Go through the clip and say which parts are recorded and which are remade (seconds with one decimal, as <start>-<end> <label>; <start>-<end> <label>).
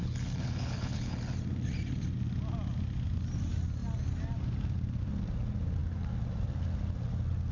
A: 0.0-1.2 remade; 1.2-7.5 recorded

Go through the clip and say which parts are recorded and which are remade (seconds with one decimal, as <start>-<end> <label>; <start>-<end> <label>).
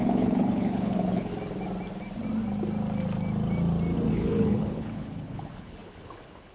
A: 0.0-1.3 remade; 1.3-4.1 recorded; 4.1-6.5 remade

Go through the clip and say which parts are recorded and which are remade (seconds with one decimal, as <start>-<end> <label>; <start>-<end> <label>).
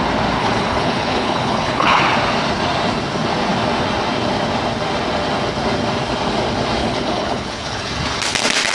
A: 0.0-0.4 recorded; 0.4-2.0 remade; 2.0-6.8 recorded; 6.8-7.9 remade; 7.9-8.7 recorded